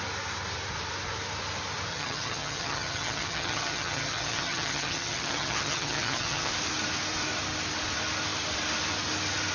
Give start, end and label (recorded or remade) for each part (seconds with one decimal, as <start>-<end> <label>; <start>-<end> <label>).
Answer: 0.0-1.9 recorded; 1.9-6.5 remade; 6.5-9.5 recorded